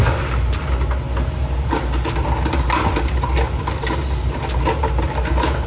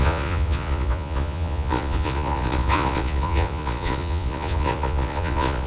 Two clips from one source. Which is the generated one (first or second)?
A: second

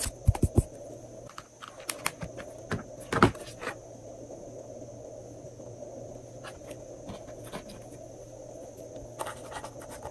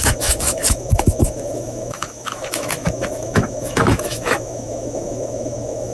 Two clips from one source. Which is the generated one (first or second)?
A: second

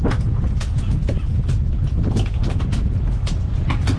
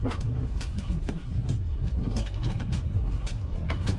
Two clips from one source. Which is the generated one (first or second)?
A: second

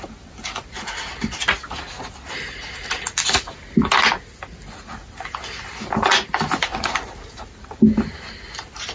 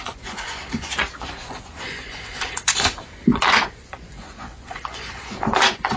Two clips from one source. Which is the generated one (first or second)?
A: second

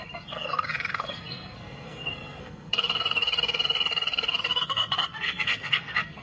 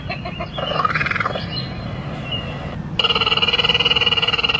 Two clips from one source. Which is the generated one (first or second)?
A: first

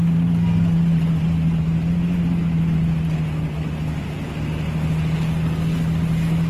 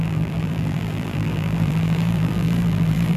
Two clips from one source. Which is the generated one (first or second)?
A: second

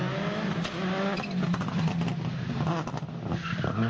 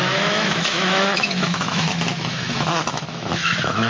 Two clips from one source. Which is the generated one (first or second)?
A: second